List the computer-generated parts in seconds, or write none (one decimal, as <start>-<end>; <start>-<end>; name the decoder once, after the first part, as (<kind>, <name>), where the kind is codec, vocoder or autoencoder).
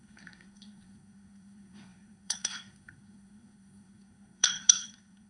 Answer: 0.0-5.3 (codec, SNAC)